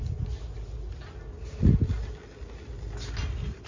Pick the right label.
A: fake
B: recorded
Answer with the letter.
B